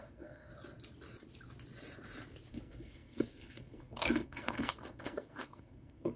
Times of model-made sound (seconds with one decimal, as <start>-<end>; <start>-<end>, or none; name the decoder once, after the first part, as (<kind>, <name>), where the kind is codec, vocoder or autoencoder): 0.0-0.5 (codec, SNAC); 2.5-6.2

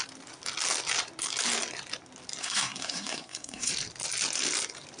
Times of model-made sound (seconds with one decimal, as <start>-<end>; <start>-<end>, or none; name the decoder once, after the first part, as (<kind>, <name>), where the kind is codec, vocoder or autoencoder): 2.4-3.7 (codec, SNAC)

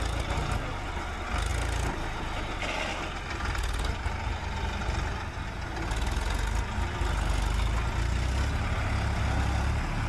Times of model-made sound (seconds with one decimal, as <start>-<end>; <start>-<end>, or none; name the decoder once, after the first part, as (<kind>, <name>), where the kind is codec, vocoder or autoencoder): none

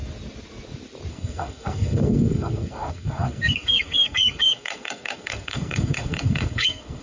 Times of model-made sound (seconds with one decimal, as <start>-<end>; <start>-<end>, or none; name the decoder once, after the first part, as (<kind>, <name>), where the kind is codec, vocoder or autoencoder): 1.1-7.0 (codec, SNAC)